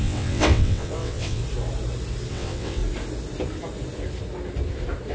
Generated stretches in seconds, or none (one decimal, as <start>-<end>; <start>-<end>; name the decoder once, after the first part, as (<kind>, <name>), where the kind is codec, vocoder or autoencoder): 0.0-1.4 (vocoder, WaveNeXt); 2.3-2.8